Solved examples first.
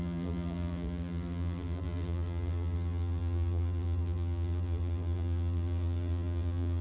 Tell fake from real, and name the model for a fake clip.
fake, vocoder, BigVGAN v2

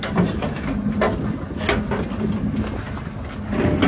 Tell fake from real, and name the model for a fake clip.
real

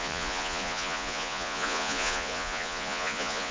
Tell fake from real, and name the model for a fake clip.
fake, vocoder, Vocos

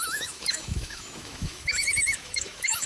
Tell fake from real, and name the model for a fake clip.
fake, autoencoder, DAC-VAE